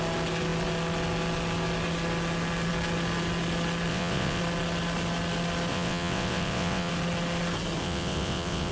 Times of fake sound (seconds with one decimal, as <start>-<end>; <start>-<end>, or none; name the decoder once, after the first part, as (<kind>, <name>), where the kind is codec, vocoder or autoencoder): 3.9-4.4 (vocoder, WaveNeXt); 5.7-6.9; 7.8-8.7